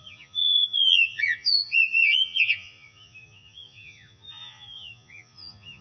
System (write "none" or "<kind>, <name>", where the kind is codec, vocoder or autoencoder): vocoder, Vocos